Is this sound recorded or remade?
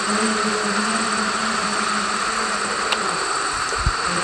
remade